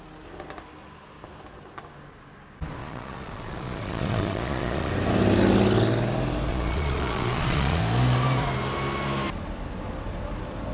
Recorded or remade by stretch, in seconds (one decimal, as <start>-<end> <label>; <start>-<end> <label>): 0.0-2.8 recorded; 2.8-4.9 remade; 4.9-6.5 recorded; 6.5-7.8 remade; 7.8-10.7 recorded